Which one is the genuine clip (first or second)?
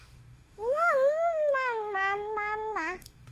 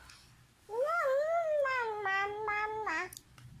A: second